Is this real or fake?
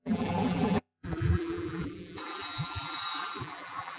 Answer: fake